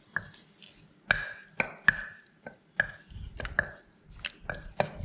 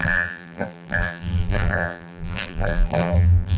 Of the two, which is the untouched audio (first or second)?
first